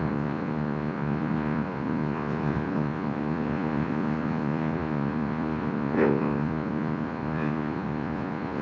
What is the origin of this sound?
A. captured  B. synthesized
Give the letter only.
B